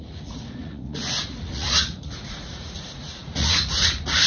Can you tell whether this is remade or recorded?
remade